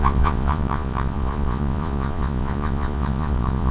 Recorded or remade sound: remade